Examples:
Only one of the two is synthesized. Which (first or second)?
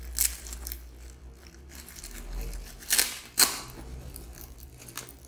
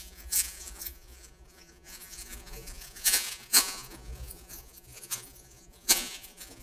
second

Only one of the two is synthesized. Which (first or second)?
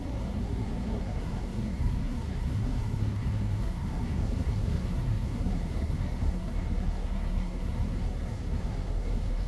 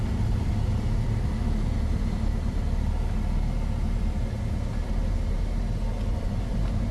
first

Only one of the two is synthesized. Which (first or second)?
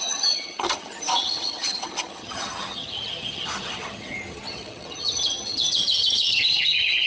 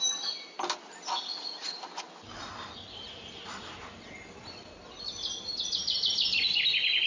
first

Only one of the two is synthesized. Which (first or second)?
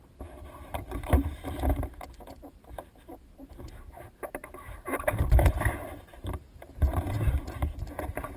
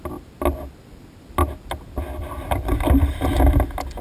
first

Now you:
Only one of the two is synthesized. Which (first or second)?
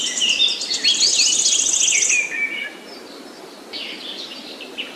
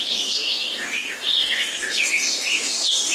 second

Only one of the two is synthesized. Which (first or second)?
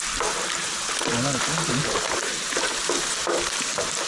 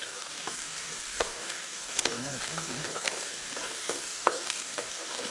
second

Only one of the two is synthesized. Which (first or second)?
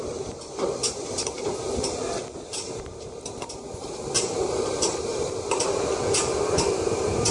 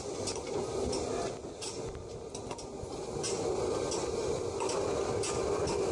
first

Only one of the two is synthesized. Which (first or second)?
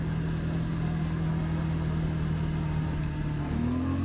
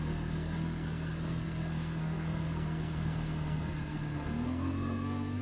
second